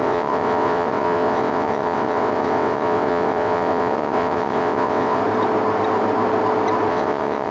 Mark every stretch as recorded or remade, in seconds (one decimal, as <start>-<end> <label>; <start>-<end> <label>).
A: 0.0-5.2 remade; 5.2-6.9 recorded; 6.9-7.5 remade